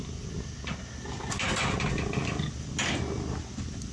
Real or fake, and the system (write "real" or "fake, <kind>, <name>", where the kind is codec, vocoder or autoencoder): real